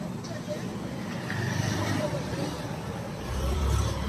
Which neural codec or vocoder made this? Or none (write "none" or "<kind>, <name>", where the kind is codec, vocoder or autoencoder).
vocoder, BigVGAN v2